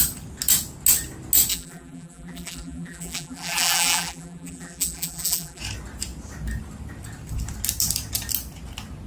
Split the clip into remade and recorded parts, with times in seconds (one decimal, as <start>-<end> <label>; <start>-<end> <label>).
0.0-1.5 recorded; 1.5-5.6 remade; 5.6-9.1 recorded